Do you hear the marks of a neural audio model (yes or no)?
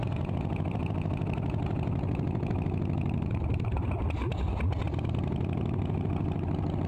yes